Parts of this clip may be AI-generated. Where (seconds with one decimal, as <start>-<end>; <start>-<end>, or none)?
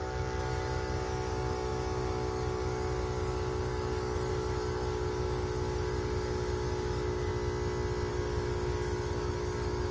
0.0-7.3; 8.1-9.9